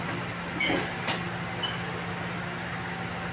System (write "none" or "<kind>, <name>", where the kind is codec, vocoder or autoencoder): none